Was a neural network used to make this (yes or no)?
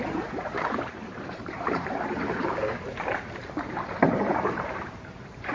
yes